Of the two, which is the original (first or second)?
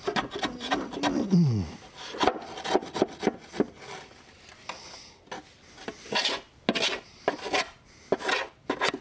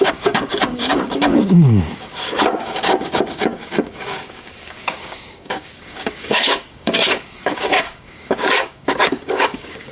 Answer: first